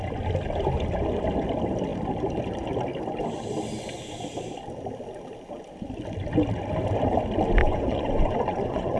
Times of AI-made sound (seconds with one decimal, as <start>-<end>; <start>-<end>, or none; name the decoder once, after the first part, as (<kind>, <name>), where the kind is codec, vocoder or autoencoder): 7.6-9.0 (vocoder, Vocos)